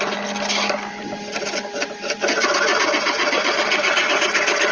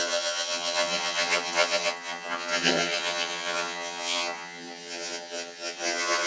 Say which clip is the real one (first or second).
first